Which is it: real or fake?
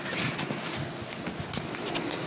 real